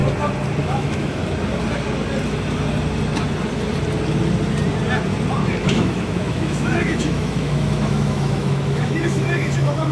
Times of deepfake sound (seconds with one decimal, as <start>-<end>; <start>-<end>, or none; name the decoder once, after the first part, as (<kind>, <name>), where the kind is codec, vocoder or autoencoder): 0.6-1.2 (autoencoder, DAC-VAE); 5.6-9.9